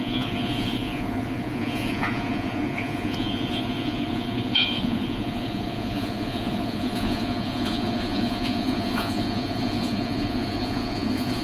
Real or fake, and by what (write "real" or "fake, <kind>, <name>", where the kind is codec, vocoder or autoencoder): fake, vocoder, Vocos